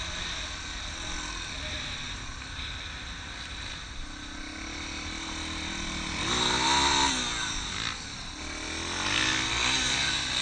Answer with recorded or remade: recorded